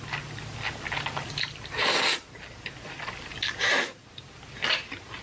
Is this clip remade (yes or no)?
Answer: no